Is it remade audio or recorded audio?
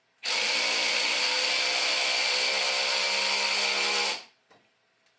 recorded